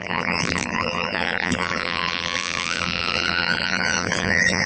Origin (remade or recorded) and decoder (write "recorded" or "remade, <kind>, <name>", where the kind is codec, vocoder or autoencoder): remade, vocoder, BigVGAN v2